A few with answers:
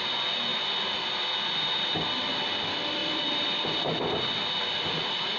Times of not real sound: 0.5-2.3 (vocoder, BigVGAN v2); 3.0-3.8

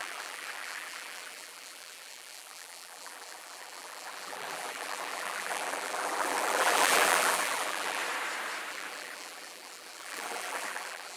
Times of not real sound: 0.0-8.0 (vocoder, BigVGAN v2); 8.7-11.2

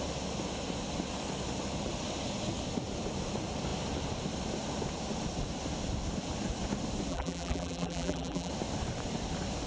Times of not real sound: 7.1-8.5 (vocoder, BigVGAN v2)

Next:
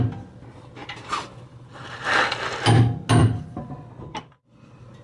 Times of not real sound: 0.8-1.7 (vocoder, BigVGAN v2); 3.2-3.7